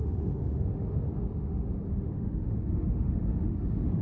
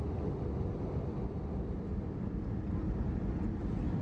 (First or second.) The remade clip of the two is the first